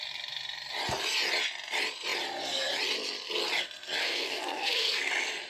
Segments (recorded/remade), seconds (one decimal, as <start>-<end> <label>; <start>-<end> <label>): 0.0-4.0 recorded; 4.0-5.1 remade; 5.1-5.5 recorded